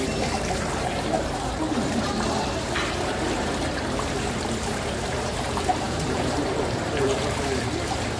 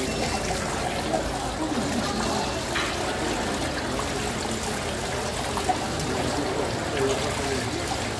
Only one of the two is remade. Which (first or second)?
first